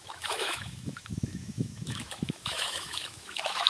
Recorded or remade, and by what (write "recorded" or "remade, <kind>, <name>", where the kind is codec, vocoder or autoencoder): remade, autoencoder, DAC-VAE